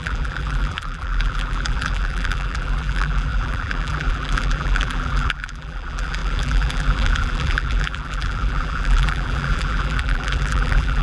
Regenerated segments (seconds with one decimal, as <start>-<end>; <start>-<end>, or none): 0.0-11.0